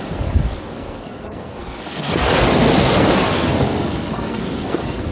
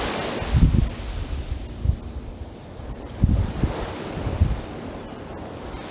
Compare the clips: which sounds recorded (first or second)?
second